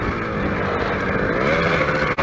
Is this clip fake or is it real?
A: real